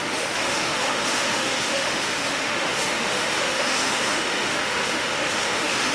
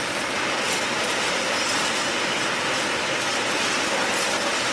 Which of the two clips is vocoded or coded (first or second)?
first